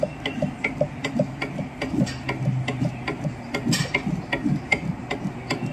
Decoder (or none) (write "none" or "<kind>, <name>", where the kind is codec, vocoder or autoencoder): none